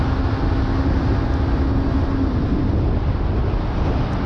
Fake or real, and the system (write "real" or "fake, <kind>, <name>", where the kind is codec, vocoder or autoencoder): real